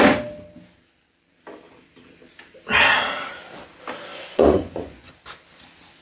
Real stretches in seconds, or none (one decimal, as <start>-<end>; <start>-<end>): 0.0-4.1; 5.1-6.0